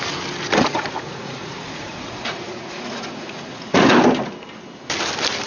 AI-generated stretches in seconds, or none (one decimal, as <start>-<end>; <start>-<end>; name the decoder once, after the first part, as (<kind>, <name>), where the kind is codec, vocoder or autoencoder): 0.5-3.8 (vocoder, Vocos)